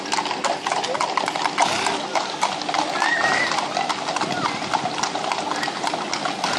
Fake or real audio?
real